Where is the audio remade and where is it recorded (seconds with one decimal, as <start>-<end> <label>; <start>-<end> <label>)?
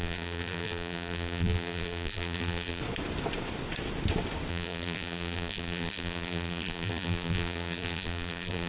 0.0-2.8 remade; 2.8-4.5 recorded; 4.5-8.7 remade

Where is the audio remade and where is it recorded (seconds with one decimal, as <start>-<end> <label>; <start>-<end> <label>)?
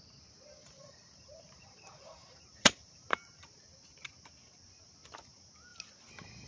0.0-0.6 recorded; 0.6-3.6 remade; 3.6-6.5 recorded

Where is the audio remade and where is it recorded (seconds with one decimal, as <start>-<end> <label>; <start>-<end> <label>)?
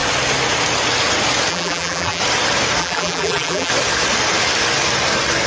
0.0-1.5 recorded; 1.5-2.2 remade; 2.2-2.8 recorded; 2.8-3.7 remade; 3.7-5.5 recorded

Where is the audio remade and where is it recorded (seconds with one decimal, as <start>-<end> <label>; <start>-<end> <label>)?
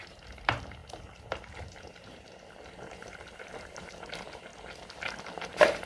0.0-4.5 remade; 4.5-5.2 recorded; 5.2-5.9 remade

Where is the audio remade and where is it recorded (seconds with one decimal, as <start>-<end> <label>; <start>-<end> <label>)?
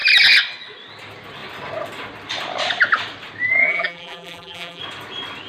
0.0-3.6 recorded; 3.6-4.8 remade; 4.8-5.5 recorded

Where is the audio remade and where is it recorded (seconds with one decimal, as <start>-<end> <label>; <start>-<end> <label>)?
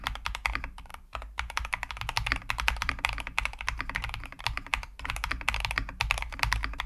0.0-6.9 remade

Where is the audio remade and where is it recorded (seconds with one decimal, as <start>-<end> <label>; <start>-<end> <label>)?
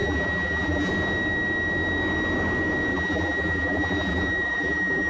0.0-0.9 remade; 0.9-2.9 recorded; 2.9-5.1 remade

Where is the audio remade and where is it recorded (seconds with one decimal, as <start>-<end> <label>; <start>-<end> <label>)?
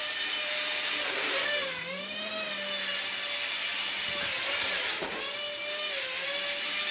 0.0-0.9 remade; 0.9-1.6 recorded; 1.6-2.3 remade; 2.3-3.7 recorded; 3.7-4.4 remade; 4.4-6.9 recorded